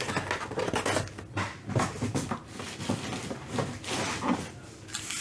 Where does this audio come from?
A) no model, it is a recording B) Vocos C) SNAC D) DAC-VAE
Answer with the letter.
A